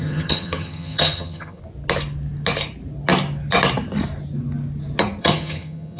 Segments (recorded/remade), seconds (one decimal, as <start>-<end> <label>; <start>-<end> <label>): 0.0-1.6 remade; 1.6-5.2 recorded; 5.2-6.0 remade